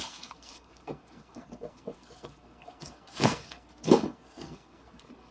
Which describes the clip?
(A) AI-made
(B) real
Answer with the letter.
A